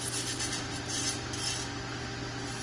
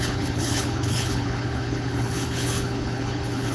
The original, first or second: first